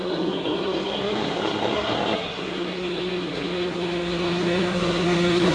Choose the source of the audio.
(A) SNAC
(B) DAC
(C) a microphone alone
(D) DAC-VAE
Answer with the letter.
A